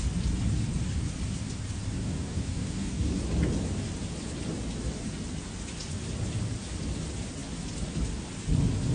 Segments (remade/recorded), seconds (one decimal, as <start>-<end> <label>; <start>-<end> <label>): 0.0-2.0 recorded; 2.0-3.2 remade; 3.2-8.9 recorded